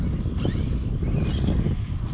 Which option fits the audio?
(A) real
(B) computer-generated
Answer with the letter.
A